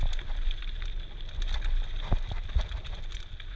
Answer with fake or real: real